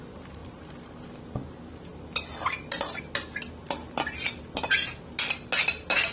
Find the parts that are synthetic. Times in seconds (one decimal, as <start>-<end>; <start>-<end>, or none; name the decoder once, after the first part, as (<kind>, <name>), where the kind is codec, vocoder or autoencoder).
0.4-1.3 (vocoder, BigVGAN v2)